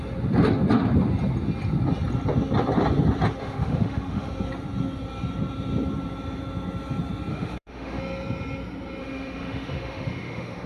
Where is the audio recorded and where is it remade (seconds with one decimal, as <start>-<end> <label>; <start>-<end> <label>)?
0.0-3.4 recorded; 3.4-4.3 remade; 4.3-7.3 recorded; 7.3-8.0 remade; 8.0-9.0 recorded; 9.0-10.7 remade